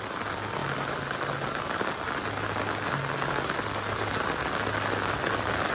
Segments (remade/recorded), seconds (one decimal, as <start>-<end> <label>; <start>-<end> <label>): 0.0-5.7 recorded